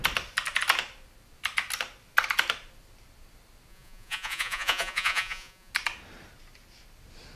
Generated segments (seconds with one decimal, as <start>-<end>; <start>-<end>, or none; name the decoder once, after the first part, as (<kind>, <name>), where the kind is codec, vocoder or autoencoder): 3.7-5.7 (vocoder, Vocos)